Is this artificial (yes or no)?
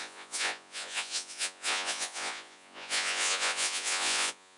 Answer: yes